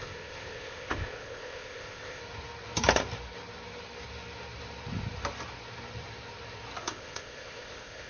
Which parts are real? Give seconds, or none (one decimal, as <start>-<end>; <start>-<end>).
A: 2.2-6.8